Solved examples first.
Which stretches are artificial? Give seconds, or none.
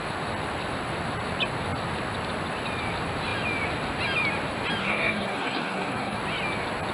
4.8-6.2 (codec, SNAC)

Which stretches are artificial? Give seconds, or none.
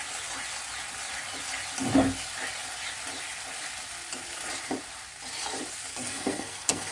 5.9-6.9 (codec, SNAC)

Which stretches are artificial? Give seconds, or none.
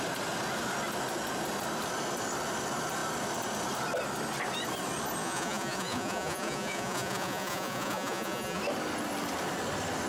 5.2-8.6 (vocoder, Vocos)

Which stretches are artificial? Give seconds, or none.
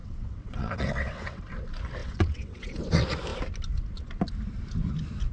0.0-1.4 (vocoder, WaveNeXt); 2.0-2.8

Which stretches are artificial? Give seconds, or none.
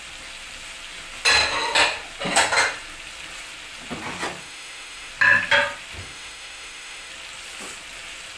4.4-5.1 (autoencoder, DAC-VAE); 6.0-7.1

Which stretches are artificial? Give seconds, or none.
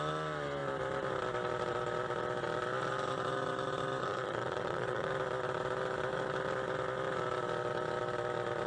4.0-5.1 (vocoder, Vocos)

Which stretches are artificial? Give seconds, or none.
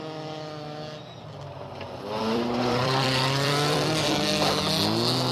2.2-4.1 (vocoder, BigVGAN v2)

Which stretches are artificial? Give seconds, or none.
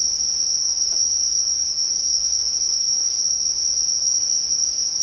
0.6-3.4 (codec, DAC); 4.0-5.0